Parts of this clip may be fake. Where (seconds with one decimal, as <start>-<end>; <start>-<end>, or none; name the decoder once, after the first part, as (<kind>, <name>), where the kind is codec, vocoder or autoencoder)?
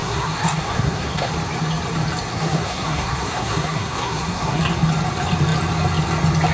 0.0-1.3 (codec, SNAC); 2.3-4.6